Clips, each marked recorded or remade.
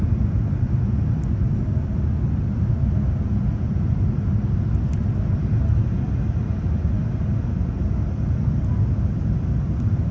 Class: recorded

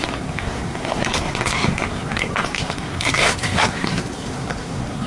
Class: remade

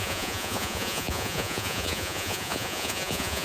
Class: remade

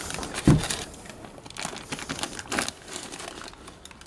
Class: recorded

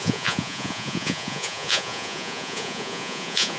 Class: remade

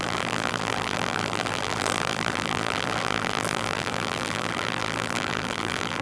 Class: remade